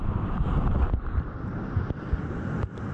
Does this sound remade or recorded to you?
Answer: recorded